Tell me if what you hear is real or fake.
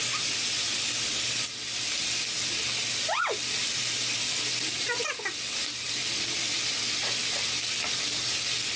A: real